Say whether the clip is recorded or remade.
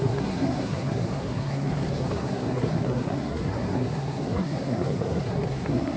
remade